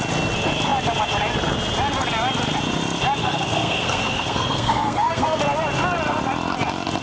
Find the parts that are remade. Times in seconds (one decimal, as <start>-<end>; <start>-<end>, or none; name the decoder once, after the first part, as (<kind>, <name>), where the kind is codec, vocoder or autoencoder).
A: 3.2-5.4 (codec, SNAC)